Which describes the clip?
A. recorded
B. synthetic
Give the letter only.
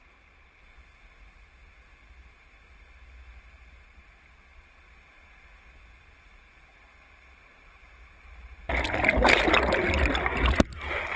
A